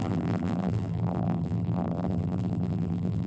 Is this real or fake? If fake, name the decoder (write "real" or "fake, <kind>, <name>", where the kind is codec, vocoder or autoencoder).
fake, vocoder, BigVGAN v2